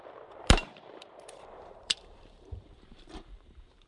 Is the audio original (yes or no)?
no